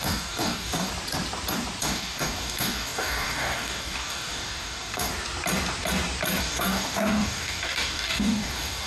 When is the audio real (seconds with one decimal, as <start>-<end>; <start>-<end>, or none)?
0.9-1.8; 5.1-6.4